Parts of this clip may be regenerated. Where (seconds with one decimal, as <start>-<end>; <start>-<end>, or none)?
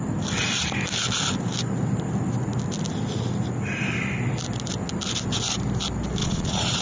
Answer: 6.2-6.8